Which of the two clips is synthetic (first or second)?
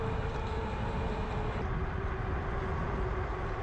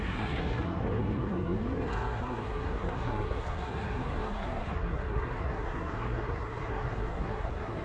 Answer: second